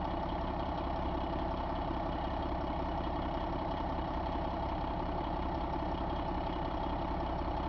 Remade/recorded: remade